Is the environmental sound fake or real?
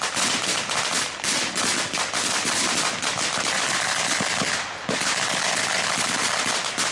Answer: real